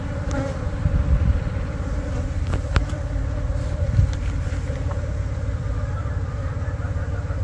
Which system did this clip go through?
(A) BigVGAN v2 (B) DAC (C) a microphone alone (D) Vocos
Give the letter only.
A